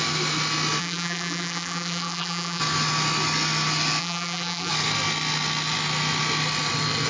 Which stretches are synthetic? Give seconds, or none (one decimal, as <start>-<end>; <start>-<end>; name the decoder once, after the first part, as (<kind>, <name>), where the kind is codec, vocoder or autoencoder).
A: 0.8-2.6 (vocoder, BigVGAN v2); 4.0-4.7